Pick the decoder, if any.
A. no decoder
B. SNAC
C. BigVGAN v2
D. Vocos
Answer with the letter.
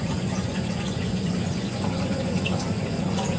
D